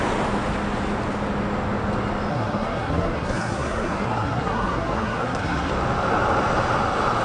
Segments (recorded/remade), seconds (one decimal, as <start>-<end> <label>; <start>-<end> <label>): 0.0-2.3 recorded; 2.3-5.7 remade; 5.7-7.2 recorded